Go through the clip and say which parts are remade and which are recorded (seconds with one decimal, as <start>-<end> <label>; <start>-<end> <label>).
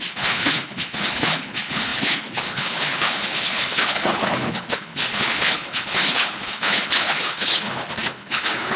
0.0-8.8 remade